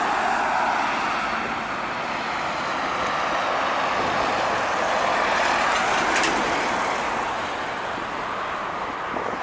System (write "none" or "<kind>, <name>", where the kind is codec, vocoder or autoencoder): none